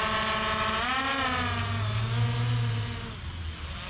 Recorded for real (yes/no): yes